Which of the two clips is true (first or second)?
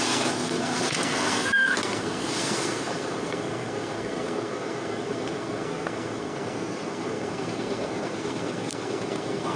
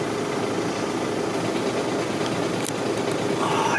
second